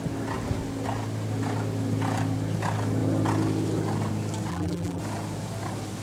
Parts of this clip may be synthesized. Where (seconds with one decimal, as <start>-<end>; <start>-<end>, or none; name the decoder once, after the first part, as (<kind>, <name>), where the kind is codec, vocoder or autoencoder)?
4.5-5.0 (vocoder, BigVGAN v2)